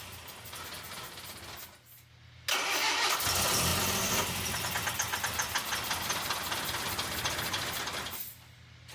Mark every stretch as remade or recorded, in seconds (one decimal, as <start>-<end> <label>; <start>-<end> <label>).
0.0-8.9 recorded